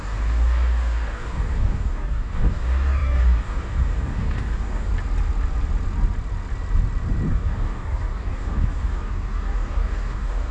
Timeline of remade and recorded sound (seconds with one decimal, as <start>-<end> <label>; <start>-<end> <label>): 0.0-4.9 remade; 4.9-7.3 recorded; 7.3-10.5 remade

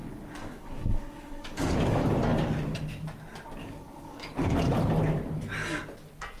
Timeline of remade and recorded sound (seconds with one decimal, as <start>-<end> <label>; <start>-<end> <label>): 0.0-2.0 remade; 2.0-3.6 recorded; 3.6-4.7 remade; 4.7-6.4 recorded

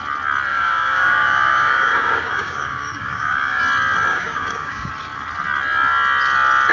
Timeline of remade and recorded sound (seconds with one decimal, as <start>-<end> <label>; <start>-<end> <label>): 0.0-0.5 recorded; 0.5-3.6 remade; 3.6-4.1 recorded; 4.1-4.9 remade; 4.9-6.7 recorded

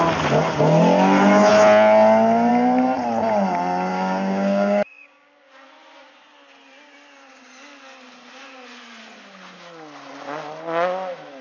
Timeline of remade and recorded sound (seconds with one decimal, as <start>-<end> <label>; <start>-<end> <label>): 0.0-3.9 recorded; 3.9-5.3 remade; 5.3-11.4 recorded

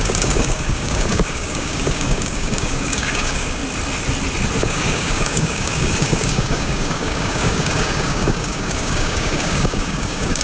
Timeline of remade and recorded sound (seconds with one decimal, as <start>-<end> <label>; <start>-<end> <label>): 0.0-3.6 remade; 3.6-4.6 recorded; 4.6-10.4 remade

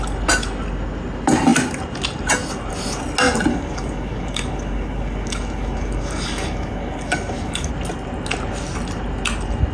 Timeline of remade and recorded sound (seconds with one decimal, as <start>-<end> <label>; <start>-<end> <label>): 0.0-3.5 recorded; 3.5-7.7 remade; 7.7-9.7 recorded

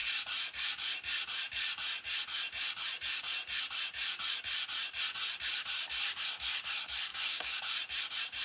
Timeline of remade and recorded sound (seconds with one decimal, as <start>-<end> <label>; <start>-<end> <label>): 0.0-7.1 recorded; 7.1-7.6 remade; 7.6-8.4 recorded

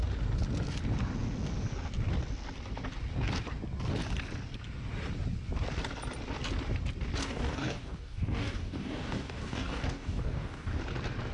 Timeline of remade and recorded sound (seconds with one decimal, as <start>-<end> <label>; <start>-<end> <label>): 0.0-7.2 recorded; 7.2-10.8 remade; 10.8-11.3 recorded